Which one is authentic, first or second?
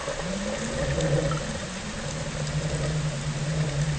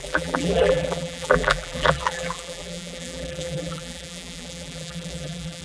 first